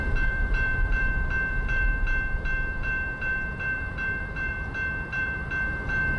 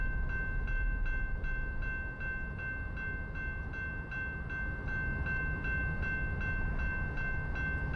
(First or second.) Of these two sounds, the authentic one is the second